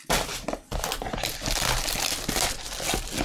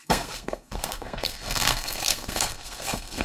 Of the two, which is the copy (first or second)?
second